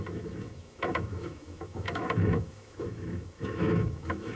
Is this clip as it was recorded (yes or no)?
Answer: no